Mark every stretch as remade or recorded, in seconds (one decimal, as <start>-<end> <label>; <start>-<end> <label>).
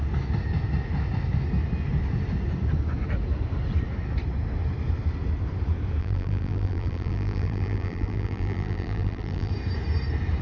0.0-6.0 recorded; 6.0-9.5 remade; 9.5-10.4 recorded